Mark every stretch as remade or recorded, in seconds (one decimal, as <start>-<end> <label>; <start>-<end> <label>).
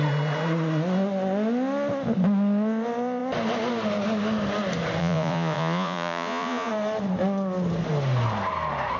0.0-5.0 recorded; 5.0-6.7 remade; 6.7-9.0 recorded